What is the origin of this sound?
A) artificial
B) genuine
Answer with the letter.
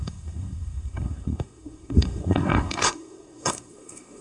A